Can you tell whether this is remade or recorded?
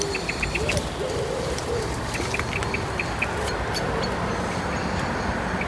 recorded